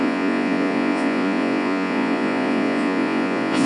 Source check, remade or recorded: remade